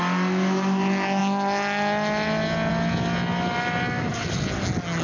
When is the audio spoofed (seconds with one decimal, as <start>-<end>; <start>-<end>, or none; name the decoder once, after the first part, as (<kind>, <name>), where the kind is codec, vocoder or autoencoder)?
none